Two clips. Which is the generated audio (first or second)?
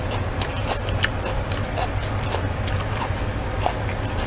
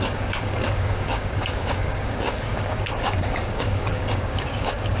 second